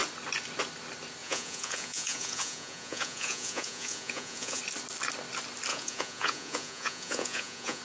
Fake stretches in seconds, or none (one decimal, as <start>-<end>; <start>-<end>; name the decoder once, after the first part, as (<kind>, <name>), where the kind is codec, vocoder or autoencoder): 1.2-4.6 (vocoder, Vocos); 5.7-7.8